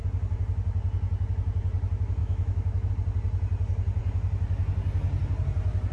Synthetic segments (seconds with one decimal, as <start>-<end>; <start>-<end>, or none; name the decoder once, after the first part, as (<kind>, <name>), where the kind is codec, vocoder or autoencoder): 2.2-2.9 (autoencoder, DAC-VAE)